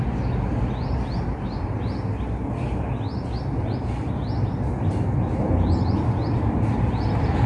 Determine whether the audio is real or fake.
real